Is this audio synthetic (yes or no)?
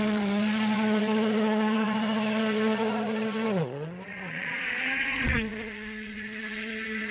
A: yes